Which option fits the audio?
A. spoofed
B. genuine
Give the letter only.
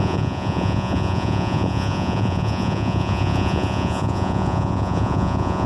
A